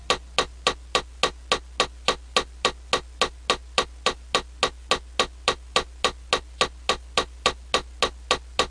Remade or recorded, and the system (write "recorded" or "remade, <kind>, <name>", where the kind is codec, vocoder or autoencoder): recorded